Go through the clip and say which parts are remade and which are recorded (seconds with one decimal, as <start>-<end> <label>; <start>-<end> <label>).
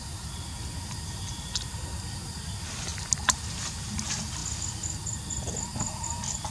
0.0-6.5 recorded